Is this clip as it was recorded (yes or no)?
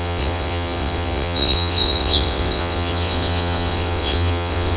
no